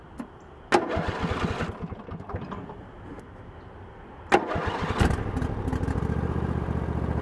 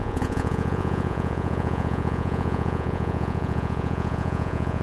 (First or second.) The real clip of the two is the first